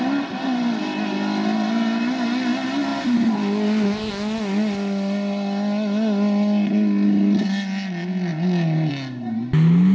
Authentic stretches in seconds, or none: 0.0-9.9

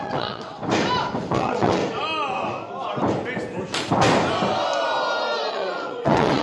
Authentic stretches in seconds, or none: 0.6-1.3; 1.8-5.5